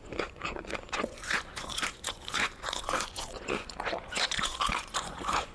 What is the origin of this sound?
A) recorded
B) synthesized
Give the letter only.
B